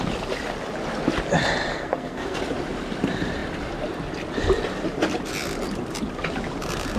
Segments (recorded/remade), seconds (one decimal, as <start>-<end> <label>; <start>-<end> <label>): 0.0-1.7 recorded; 1.7-2.4 remade; 2.4-7.0 recorded